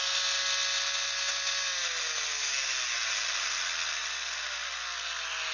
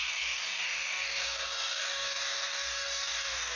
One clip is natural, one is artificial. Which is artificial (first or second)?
second